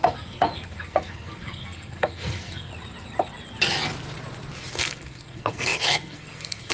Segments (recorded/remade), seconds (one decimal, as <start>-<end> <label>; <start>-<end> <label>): 0.0-2.7 remade; 2.7-4.7 recorded; 4.7-6.7 remade

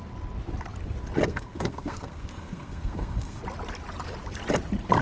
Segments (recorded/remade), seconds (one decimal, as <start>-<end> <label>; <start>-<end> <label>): 0.0-1.3 recorded; 1.3-3.4 remade; 3.4-5.0 recorded

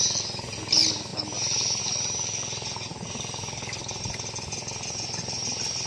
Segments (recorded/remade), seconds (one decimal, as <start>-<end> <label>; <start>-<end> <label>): 0.0-5.9 recorded